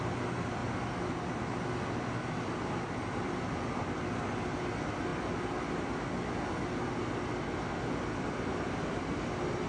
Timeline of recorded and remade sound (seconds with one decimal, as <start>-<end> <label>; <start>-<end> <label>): 0.0-9.7 recorded